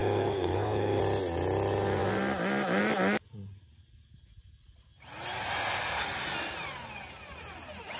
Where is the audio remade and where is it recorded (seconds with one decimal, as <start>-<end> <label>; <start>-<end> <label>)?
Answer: 0.0-1.0 remade; 1.0-8.0 recorded